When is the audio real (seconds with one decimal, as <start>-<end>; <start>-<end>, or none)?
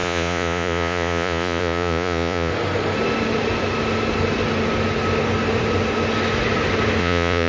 2.5-7.0